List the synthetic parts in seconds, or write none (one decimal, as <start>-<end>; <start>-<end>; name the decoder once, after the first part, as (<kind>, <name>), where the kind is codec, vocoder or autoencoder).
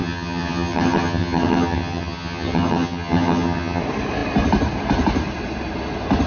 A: 0.0-3.8 (vocoder, HiFi-GAN)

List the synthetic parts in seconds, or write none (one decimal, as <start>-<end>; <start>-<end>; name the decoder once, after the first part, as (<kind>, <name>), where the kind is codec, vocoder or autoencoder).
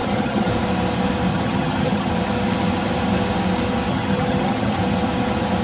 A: 0.0-0.5 (vocoder, HiFi-GAN); 1.3-2.1; 3.9-4.8